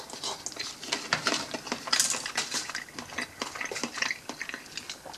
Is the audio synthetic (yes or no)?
no